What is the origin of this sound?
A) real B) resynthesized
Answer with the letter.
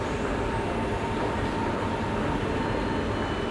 A